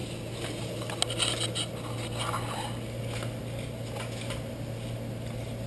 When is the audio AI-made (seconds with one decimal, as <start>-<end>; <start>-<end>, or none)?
none